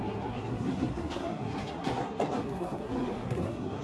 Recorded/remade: remade